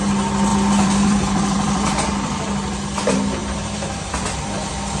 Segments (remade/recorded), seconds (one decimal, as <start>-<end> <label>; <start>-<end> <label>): 0.0-0.5 recorded; 0.5-2.8 remade; 2.8-3.4 recorded; 3.4-5.0 remade

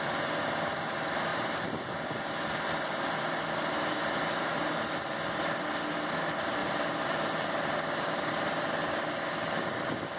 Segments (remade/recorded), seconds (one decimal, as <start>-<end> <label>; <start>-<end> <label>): 0.0-1.3 recorded; 1.3-1.9 remade; 1.9-6.6 recorded; 6.6-8.6 remade; 8.6-10.2 recorded

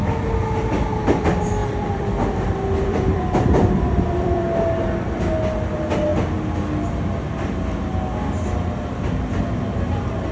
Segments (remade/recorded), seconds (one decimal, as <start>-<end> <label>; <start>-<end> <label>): 0.0-1.6 recorded; 1.6-4.4 remade; 4.4-10.3 recorded